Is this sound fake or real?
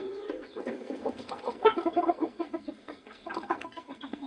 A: fake